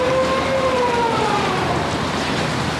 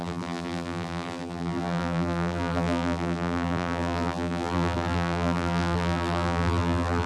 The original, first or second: first